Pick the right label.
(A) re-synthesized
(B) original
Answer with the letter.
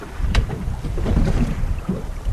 A